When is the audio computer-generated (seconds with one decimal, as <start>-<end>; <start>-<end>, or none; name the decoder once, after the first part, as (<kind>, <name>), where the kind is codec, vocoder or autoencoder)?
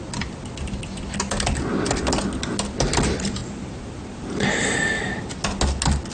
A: none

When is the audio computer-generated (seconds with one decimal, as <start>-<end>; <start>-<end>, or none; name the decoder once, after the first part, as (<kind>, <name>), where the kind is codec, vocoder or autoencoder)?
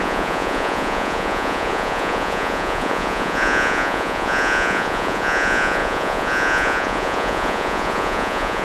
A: 0.0-8.6 (vocoder, Vocos)